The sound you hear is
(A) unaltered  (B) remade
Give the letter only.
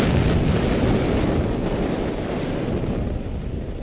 A